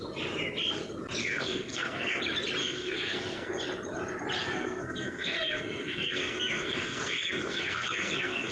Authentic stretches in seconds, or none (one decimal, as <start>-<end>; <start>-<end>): 0.0-1.2; 2.2-2.6; 3.6-4.4